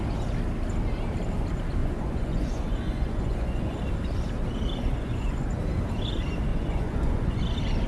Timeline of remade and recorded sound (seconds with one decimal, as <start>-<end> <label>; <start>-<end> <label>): 0.0-1.8 recorded; 1.8-3.8 remade; 3.8-4.8 recorded; 4.8-5.6 remade; 5.6-6.5 recorded; 6.5-7.4 remade; 7.4-7.9 recorded